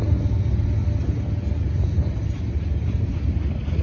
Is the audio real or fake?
real